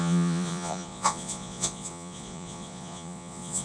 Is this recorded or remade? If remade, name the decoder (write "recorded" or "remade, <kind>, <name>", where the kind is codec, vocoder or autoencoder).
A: remade, vocoder, Vocos